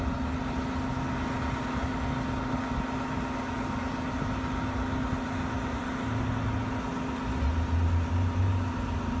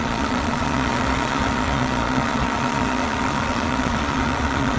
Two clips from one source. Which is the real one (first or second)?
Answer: first